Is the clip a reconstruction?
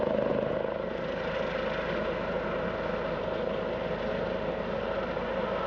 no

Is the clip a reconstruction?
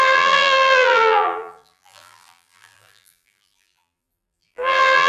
yes